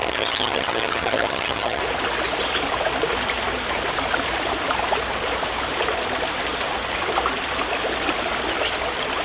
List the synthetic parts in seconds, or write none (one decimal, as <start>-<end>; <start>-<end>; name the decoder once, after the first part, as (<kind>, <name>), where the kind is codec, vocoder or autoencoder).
0.0-1.8 (vocoder, HiFi-GAN)